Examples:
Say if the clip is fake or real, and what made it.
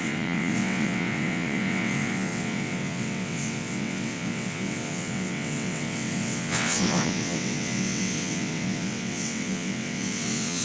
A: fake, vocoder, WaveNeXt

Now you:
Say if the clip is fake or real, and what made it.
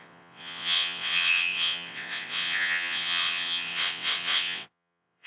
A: fake, vocoder, WaveNeXt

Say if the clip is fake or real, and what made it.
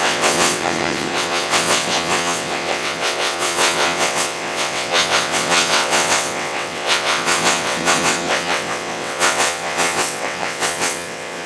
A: fake, vocoder, WaveNeXt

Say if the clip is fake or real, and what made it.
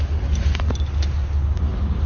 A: real